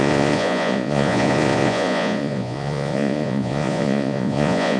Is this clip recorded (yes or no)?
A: no